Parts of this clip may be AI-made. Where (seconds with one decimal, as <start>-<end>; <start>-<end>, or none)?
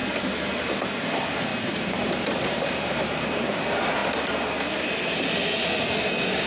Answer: 1.5-3.6